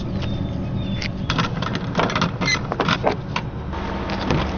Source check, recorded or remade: recorded